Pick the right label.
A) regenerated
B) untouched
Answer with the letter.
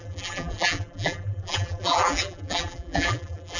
A